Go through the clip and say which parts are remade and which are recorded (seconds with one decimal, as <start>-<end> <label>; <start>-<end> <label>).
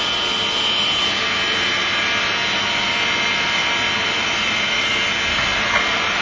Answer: 0.0-3.6 recorded; 3.6-4.7 remade; 4.7-6.2 recorded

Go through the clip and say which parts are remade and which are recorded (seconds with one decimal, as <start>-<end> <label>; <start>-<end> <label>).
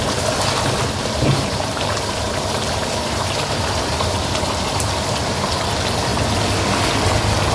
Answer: 0.0-1.0 recorded; 1.0-5.5 remade; 5.5-7.5 recorded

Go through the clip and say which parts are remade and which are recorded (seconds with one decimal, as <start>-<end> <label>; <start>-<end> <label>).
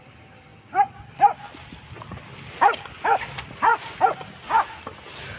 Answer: 0.0-0.5 remade; 0.5-3.2 recorded; 3.2-3.7 remade; 3.7-5.4 recorded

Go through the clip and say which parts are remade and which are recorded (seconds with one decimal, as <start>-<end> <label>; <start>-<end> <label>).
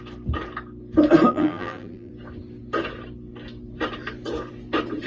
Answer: 0.0-1.3 recorded; 1.3-2.1 remade; 2.1-5.1 recorded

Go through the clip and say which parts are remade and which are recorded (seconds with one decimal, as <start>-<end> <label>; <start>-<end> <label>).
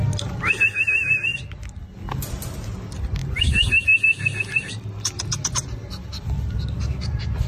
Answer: 0.0-7.5 recorded